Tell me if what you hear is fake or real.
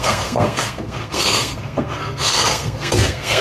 fake